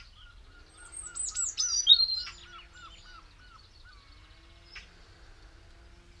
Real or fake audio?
real